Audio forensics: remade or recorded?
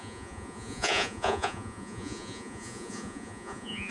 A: remade